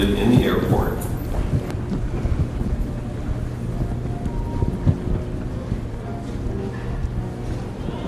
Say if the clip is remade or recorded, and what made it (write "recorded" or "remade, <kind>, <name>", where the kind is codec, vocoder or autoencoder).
recorded